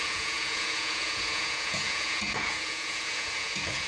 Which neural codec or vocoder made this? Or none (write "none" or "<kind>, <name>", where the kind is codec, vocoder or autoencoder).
vocoder, Vocos